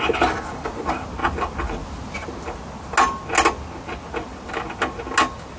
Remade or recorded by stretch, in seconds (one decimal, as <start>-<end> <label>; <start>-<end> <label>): 0.0-5.6 recorded